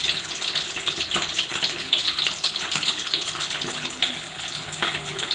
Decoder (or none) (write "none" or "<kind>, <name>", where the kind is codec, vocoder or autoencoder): codec, HILCodec